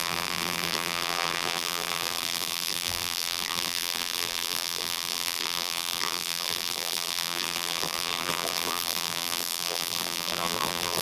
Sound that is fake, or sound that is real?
fake